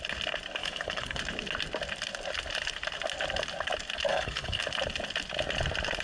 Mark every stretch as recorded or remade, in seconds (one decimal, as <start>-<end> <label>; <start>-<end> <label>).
0.0-0.6 recorded; 0.6-1.2 remade; 1.2-4.1 recorded; 4.1-4.6 remade; 4.6-6.0 recorded